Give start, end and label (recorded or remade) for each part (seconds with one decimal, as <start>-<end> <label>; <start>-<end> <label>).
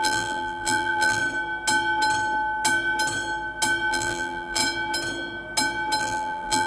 0.0-1.2 remade; 1.2-3.9 recorded; 3.9-4.6 remade; 4.6-6.0 recorded; 6.0-6.7 remade